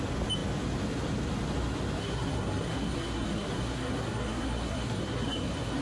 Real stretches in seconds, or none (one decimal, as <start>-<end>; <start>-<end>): 0.0-2.0